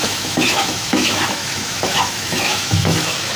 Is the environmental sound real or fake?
fake